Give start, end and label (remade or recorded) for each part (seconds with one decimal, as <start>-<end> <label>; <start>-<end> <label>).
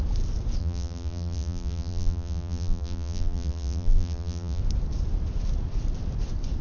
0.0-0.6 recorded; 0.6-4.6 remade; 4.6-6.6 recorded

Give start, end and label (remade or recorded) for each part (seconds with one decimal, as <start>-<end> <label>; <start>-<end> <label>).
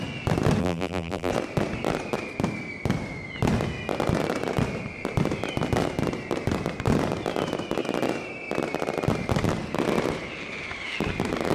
0.0-0.6 recorded; 0.6-1.3 remade; 1.3-11.5 recorded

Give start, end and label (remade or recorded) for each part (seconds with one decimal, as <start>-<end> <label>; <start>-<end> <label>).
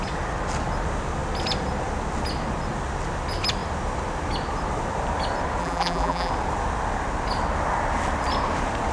0.0-5.6 recorded; 5.6-6.3 remade; 6.3-8.9 recorded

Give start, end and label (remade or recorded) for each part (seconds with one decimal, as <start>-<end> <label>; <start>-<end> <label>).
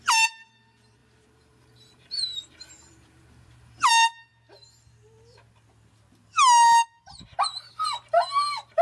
0.0-4.3 remade; 4.3-7.4 recorded; 7.4-8.8 remade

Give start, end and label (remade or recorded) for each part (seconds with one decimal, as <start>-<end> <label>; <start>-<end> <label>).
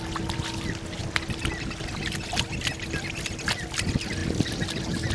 0.0-5.1 recorded